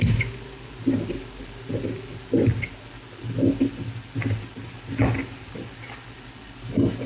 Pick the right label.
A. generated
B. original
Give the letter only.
B